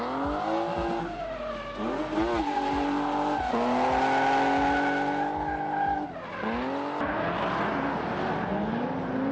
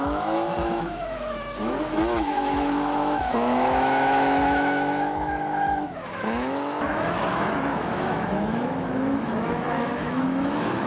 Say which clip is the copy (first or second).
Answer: second